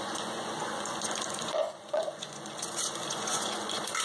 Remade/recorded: remade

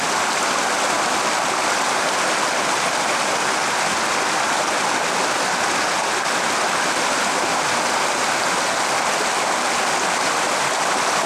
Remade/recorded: recorded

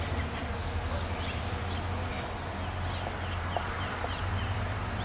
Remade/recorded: recorded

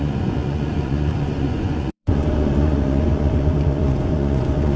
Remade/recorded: remade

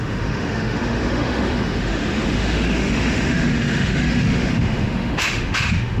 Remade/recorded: remade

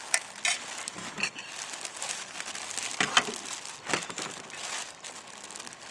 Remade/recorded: recorded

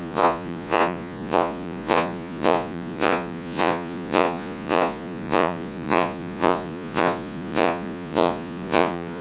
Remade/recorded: remade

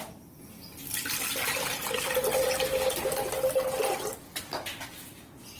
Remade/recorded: recorded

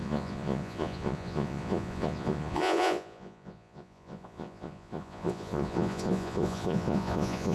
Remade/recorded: remade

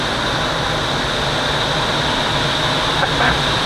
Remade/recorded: recorded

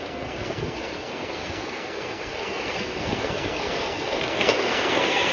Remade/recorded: remade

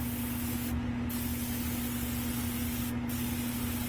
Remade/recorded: recorded